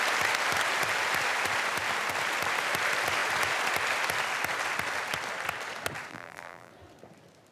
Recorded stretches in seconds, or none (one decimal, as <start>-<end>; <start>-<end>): 0.0-6.1; 6.7-7.5